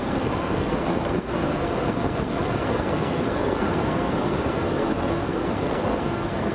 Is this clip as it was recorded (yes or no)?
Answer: no